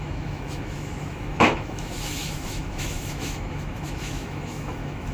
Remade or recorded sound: remade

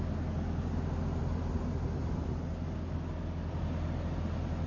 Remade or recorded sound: recorded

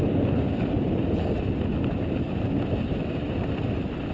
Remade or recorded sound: recorded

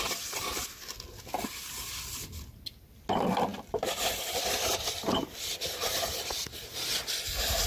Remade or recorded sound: recorded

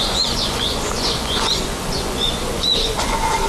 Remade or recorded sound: remade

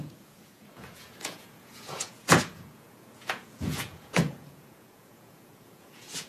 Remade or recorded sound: remade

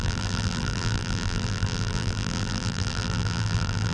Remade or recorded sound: remade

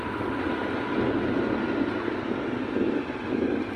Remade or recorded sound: recorded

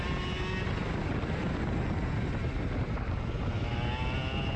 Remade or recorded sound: recorded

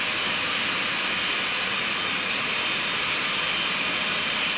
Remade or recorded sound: recorded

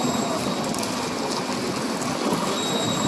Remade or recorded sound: recorded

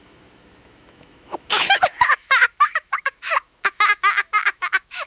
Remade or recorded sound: remade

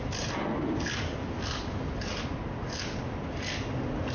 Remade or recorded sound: recorded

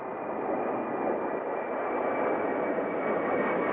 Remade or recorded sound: recorded